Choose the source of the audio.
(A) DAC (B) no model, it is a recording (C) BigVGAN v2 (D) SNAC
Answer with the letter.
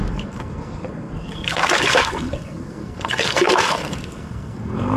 D